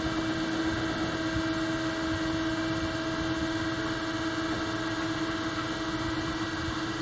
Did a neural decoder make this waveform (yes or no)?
no